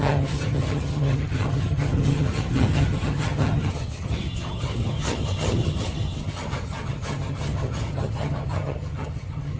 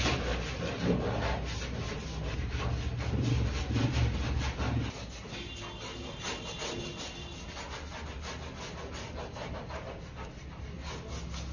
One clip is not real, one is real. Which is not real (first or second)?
first